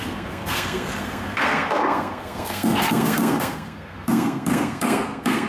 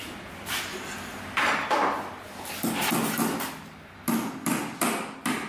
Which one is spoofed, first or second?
first